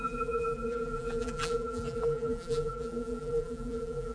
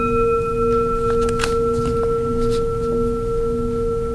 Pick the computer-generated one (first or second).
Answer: first